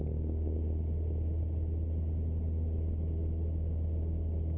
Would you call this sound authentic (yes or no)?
yes